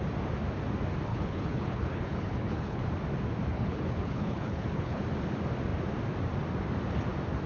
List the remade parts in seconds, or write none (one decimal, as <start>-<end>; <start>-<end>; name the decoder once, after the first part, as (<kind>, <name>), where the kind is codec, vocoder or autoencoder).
1.1-2.8 (codec, HILCodec); 3.5-5.0